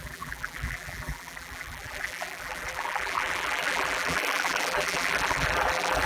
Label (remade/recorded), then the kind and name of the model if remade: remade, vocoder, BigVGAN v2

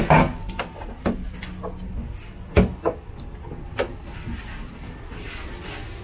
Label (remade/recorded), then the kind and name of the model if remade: recorded